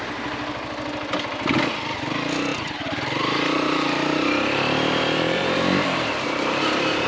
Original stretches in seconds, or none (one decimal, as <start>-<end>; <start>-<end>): 0.0-2.5